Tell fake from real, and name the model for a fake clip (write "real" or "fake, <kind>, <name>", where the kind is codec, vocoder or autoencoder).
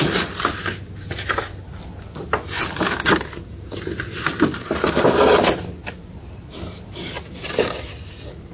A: real